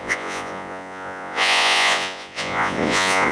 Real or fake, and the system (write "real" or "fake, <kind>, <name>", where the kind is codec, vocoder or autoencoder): fake, vocoder, Vocos